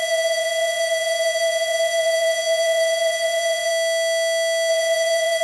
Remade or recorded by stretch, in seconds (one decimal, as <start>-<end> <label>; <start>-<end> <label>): 0.0-3.7 remade; 3.7-4.7 recorded; 4.7-5.4 remade